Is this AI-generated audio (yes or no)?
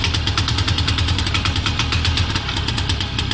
yes